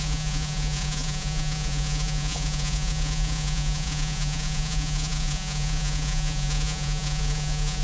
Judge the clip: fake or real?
fake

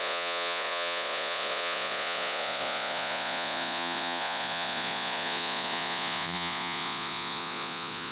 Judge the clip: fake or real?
fake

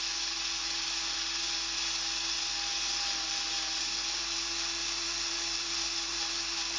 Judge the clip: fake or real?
real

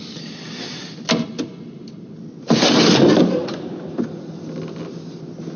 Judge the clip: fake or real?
real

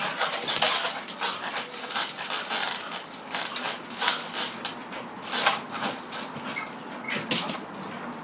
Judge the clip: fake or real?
real